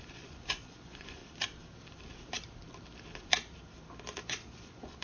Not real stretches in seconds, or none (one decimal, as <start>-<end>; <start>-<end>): 0.0-1.2; 4.2-5.0